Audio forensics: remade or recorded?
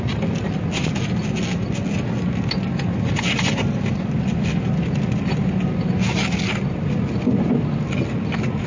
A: recorded